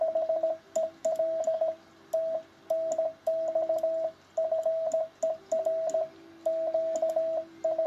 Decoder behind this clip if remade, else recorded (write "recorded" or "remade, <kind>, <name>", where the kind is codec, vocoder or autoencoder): recorded